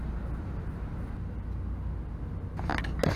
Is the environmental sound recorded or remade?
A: recorded